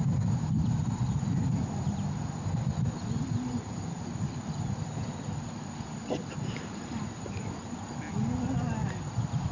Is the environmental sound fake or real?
real